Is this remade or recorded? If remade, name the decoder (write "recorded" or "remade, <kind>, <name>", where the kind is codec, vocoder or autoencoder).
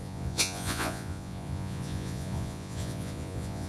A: remade, vocoder, Vocos